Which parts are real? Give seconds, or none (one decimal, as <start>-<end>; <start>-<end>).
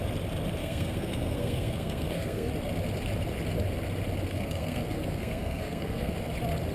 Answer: 0.0-0.6; 2.5-4.3; 6.1-6.7